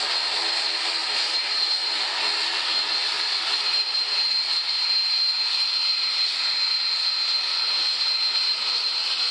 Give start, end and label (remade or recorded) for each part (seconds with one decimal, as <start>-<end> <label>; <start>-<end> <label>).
0.0-1.0 recorded; 1.0-1.9 remade; 1.9-9.3 recorded